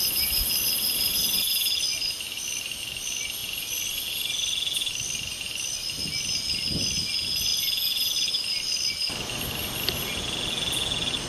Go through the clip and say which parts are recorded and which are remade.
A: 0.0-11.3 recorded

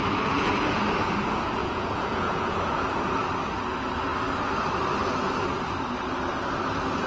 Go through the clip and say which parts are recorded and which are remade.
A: 0.0-0.8 remade; 0.8-1.6 recorded; 1.6-3.0 remade; 3.0-7.1 recorded

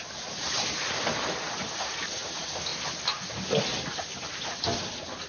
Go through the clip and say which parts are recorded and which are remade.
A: 0.0-5.3 recorded

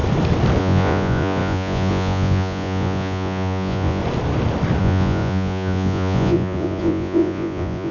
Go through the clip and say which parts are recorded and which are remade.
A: 0.0-0.6 recorded; 0.6-4.0 remade; 4.0-4.8 recorded; 4.8-7.9 remade

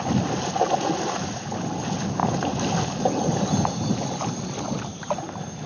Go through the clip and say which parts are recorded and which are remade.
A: 0.0-5.7 recorded

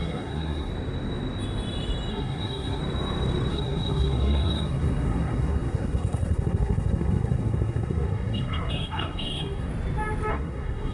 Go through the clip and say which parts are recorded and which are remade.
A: 0.0-0.7 remade; 0.7-2.1 recorded; 2.1-2.8 remade; 2.8-3.5 recorded; 3.5-9.7 remade; 9.7-10.3 recorded; 10.3-10.9 remade

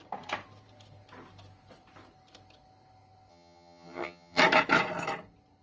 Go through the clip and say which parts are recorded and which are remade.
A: 0.0-3.3 recorded; 3.3-4.4 remade; 4.4-5.6 recorded

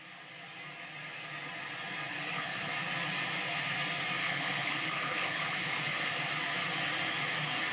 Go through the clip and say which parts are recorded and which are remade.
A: 0.0-2.1 recorded; 2.1-2.7 remade; 2.7-4.2 recorded; 4.2-6.1 remade; 6.1-7.7 recorded